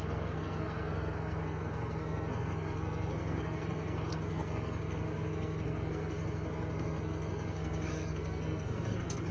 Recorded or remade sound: remade